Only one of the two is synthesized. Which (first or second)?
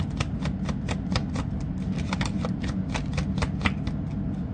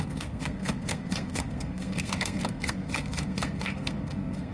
second